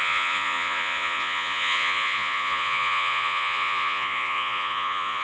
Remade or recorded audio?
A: remade